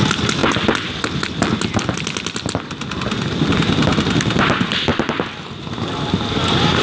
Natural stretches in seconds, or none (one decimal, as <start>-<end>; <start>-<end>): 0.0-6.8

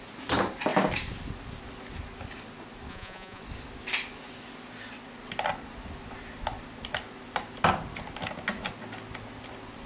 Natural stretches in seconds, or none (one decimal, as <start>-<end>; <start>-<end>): 0.0-2.9; 3.4-9.9

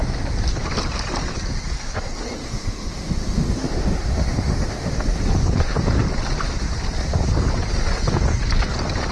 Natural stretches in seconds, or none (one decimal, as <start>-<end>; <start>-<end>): 0.0-2.4; 5.2-9.1

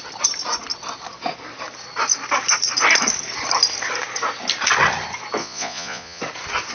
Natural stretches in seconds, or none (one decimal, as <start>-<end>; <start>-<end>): 0.0-5.4; 6.2-6.7